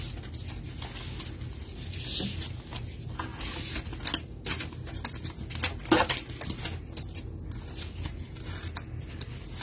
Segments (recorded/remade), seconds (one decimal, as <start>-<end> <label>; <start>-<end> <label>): 0.0-9.6 recorded

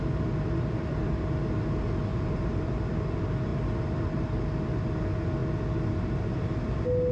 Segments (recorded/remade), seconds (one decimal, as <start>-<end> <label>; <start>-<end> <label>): 0.0-2.1 recorded; 2.1-2.7 remade; 2.7-7.1 recorded

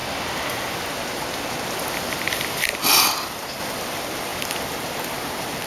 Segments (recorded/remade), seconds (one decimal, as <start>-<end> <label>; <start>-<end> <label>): 0.0-1.8 recorded; 1.8-5.7 remade

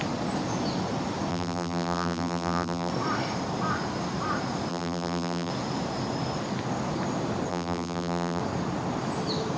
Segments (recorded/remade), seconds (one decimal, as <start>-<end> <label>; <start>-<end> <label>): 0.0-1.3 recorded; 1.3-2.9 remade; 2.9-4.7 recorded; 4.7-5.5 remade; 5.5-7.5 recorded; 7.5-8.4 remade; 8.4-9.6 recorded